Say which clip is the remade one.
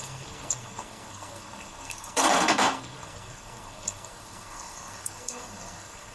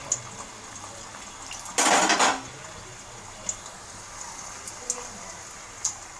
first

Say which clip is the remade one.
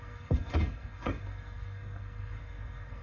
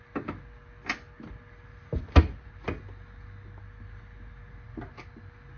first